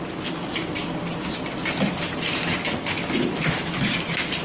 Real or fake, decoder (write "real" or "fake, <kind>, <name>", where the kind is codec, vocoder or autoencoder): real